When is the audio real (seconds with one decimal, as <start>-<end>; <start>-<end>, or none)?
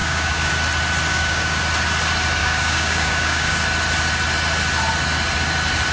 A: 0.5-1.1; 1.6-2.4; 3.5-5.9